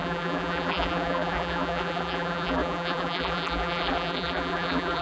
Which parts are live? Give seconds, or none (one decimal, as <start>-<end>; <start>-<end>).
none